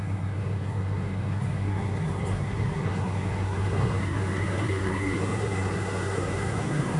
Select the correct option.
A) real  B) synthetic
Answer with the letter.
B